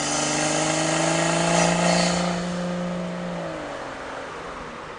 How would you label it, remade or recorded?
recorded